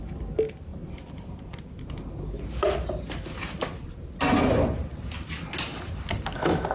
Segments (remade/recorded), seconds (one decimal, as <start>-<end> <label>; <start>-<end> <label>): 0.0-6.7 recorded